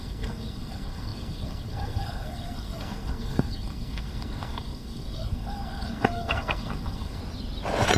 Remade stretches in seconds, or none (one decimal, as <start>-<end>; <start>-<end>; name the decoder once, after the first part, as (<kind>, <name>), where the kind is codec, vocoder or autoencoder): 0.0-7.2 (codec, SNAC)